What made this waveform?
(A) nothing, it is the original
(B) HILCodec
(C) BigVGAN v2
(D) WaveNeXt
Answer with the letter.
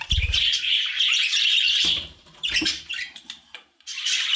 C